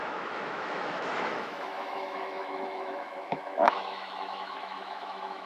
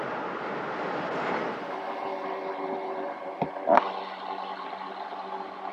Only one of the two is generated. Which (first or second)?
first